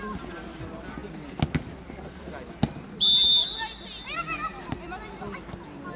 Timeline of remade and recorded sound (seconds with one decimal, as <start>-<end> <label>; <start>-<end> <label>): 0.0-6.0 recorded